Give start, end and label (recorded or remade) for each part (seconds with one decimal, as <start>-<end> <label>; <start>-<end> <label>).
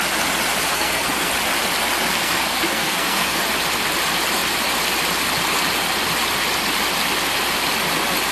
0.0-0.7 recorded; 0.7-1.3 remade; 1.3-2.1 recorded; 2.1-3.4 remade; 3.4-8.3 recorded